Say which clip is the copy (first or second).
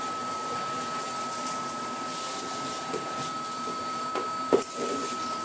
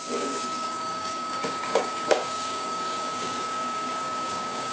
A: second